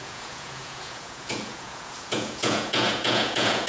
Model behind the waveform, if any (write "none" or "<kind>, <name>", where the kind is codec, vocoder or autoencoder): vocoder, Vocos